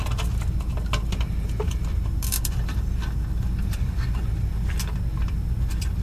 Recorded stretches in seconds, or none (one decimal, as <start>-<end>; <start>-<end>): 0.0-6.0